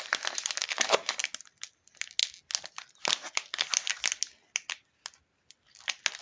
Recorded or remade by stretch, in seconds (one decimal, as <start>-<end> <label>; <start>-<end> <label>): 0.0-0.6 recorded; 0.6-1.2 remade; 1.2-6.2 recorded